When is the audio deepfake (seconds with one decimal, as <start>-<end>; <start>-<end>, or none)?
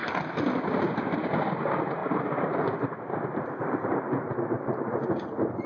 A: 2.0-5.7